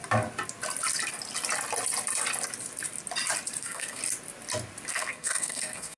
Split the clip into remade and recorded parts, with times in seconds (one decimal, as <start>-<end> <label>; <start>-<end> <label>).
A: 0.0-3.6 recorded; 3.6-4.0 remade; 4.0-4.9 recorded; 4.9-6.0 remade